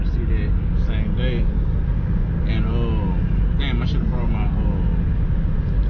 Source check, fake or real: real